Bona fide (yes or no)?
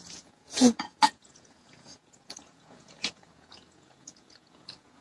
no